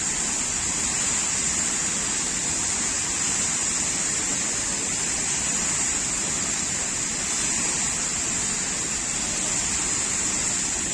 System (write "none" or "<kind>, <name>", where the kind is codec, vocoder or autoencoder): none